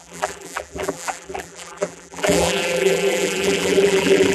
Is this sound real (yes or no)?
no